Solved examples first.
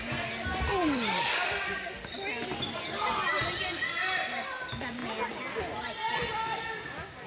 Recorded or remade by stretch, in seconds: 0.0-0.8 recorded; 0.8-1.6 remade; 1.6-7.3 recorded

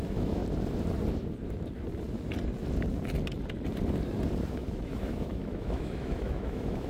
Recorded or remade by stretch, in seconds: 0.0-0.4 remade; 0.4-4.5 recorded; 4.5-6.9 remade